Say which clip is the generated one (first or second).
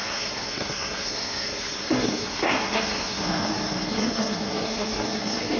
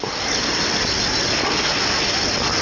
first